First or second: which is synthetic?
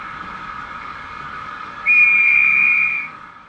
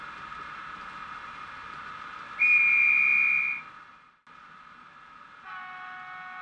first